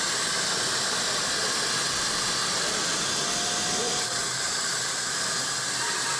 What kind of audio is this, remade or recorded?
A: recorded